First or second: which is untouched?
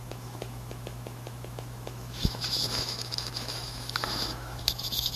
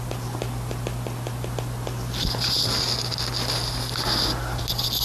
second